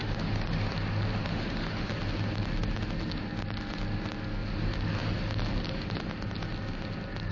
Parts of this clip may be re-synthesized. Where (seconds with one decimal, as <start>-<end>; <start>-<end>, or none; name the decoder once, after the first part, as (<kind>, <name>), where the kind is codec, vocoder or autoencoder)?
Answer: 0.0-0.7 (autoencoder, DAC-VAE); 1.2-1.9